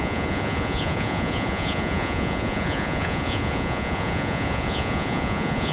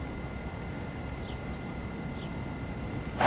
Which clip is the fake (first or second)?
first